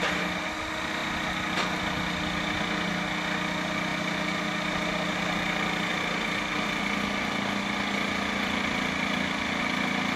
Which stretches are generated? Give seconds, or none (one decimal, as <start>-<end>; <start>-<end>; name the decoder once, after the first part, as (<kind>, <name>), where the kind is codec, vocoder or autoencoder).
none